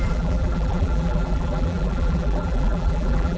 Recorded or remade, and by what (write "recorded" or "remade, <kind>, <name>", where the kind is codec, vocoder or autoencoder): remade, vocoder, BigVGAN v2